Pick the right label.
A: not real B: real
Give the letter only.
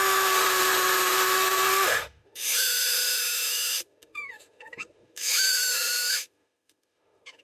A